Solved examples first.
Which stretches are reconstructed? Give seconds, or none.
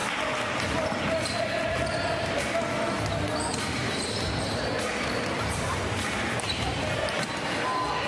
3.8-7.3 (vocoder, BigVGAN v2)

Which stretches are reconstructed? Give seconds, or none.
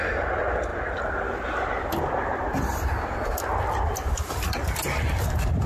none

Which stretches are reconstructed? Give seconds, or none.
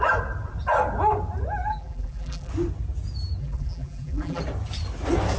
1.7-2.5 (vocoder, BigVGAN v2); 3.4-4.4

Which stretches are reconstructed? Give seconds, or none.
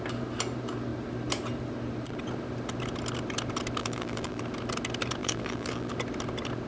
3.8-4.4 (vocoder, BigVGAN v2); 5.2-5.9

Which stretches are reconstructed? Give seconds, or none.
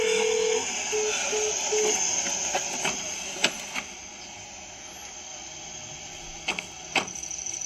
none